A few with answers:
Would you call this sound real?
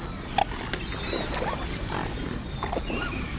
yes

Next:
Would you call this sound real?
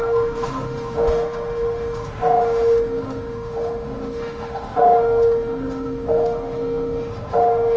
no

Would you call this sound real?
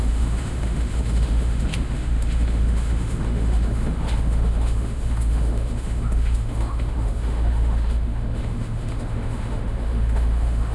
no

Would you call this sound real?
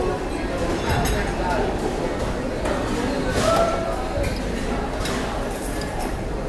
yes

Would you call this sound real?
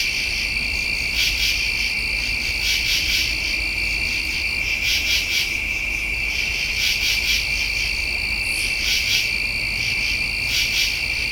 yes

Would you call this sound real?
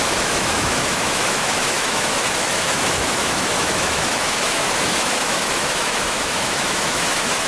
no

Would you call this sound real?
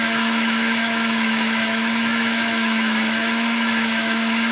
no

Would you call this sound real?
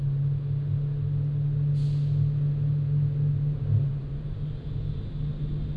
yes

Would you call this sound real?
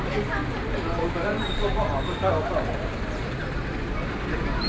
yes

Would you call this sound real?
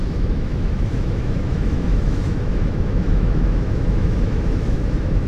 no